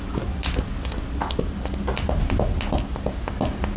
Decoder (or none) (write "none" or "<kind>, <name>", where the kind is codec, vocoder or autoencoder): none